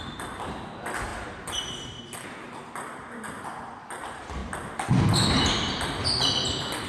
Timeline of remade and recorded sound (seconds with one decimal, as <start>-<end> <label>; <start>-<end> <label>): 0.0-4.4 remade; 4.4-6.9 recorded